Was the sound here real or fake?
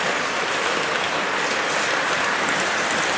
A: real